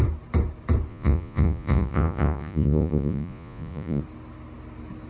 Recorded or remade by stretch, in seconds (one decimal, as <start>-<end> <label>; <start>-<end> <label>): 0.0-0.9 recorded; 0.9-4.0 remade; 4.0-5.1 recorded